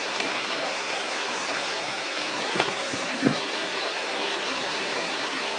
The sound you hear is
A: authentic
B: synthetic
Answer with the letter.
B